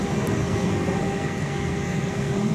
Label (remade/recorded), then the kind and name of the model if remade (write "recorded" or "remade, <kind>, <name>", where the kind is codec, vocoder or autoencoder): remade, codec, SNAC